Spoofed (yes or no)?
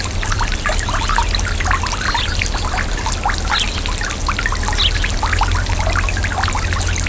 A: no